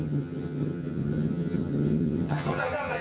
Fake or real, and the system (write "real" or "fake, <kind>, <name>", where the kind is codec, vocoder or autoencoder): fake, vocoder, HiFi-GAN